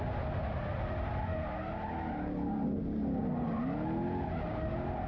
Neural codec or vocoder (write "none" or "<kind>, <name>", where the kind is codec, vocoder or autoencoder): none